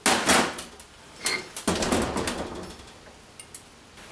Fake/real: real